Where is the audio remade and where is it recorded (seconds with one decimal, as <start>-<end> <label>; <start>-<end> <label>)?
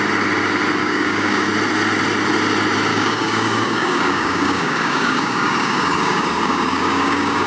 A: 0.0-0.8 recorded; 0.8-1.5 remade; 1.5-2.9 recorded; 2.9-7.5 remade